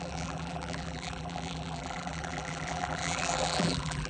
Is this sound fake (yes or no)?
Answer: yes